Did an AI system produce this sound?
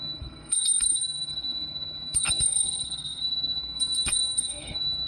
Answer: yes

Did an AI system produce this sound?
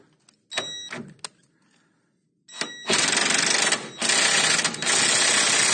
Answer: no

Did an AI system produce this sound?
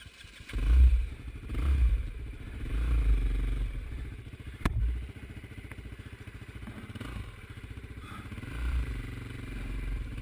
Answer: yes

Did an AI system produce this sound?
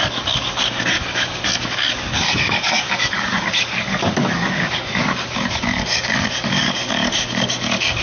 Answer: yes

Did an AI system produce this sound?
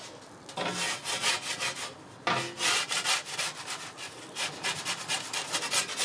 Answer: no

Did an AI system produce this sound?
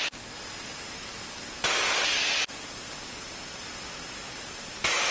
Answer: no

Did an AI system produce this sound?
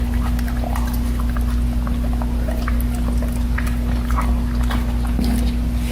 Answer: no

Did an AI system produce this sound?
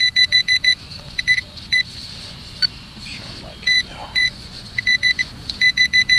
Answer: yes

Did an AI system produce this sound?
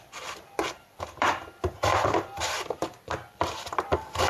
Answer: yes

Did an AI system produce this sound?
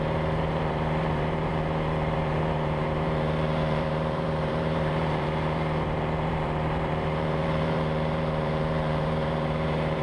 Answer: yes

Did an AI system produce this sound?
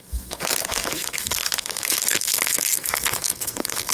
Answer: yes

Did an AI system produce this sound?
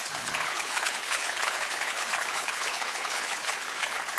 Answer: yes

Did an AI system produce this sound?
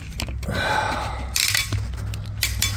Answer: no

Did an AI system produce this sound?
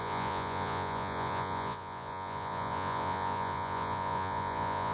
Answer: yes